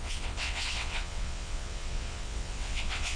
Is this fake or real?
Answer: fake